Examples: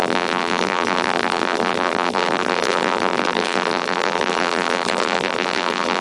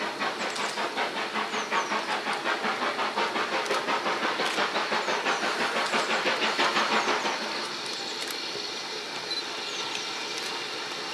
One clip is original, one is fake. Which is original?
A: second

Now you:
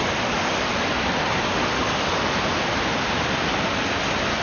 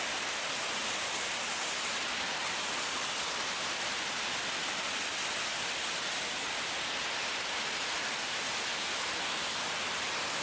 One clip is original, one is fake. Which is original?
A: second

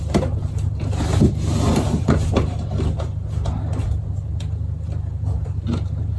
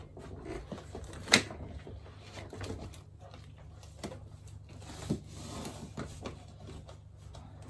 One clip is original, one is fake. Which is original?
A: second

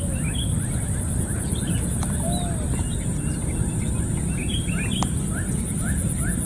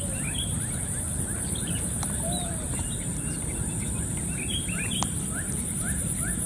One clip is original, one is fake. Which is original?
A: first